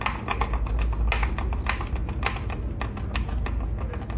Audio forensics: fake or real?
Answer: real